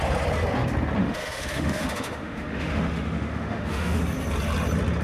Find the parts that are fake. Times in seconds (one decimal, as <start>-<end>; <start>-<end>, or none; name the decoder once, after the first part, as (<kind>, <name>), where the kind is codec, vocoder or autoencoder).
1.0-4.0 (autoencoder, DAC-VAE)

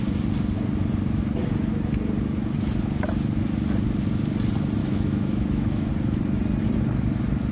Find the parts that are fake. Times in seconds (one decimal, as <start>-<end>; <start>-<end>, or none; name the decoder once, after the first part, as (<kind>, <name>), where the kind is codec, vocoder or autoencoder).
4.8-5.9 (autoencoder, DAC-VAE)

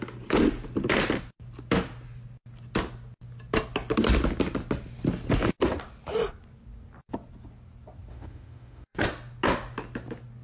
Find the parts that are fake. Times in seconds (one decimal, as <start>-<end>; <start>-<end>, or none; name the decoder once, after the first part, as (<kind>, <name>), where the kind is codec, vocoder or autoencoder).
8.1-9.0 (autoencoder, DAC-VAE)

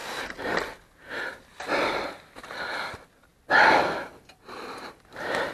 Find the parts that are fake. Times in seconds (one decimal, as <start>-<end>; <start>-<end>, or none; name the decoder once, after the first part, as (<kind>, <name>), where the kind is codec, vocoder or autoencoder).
none

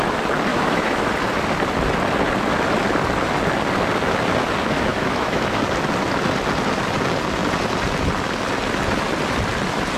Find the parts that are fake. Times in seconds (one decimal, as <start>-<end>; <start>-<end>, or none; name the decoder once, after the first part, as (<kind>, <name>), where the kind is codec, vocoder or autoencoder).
0.5-1.1 (autoencoder, DAC-VAE); 4.9-5.6